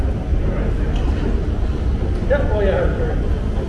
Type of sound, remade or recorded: recorded